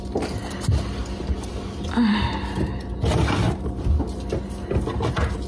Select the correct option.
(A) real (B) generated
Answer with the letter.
A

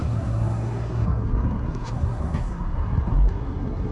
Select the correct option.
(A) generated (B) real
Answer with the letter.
A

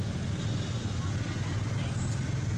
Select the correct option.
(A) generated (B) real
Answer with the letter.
B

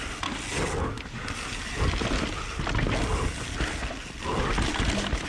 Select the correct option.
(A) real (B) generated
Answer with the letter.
A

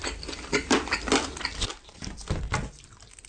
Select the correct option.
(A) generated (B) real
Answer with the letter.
B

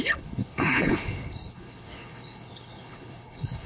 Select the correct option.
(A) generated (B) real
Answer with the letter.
A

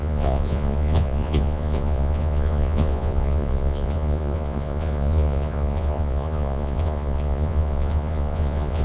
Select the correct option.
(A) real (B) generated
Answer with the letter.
B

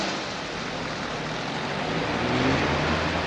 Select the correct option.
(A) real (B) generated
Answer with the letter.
A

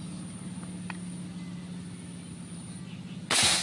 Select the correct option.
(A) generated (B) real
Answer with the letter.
B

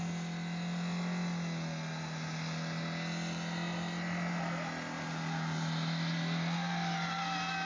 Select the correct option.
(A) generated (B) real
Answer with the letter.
B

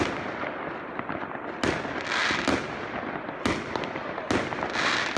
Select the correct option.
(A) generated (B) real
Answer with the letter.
B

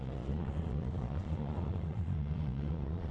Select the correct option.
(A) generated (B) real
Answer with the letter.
A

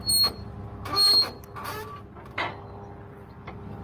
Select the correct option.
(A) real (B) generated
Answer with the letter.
A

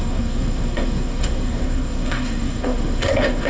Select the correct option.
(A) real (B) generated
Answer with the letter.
B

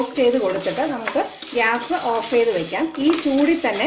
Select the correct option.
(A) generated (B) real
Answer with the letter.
B